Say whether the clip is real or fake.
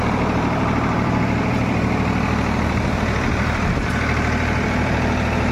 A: fake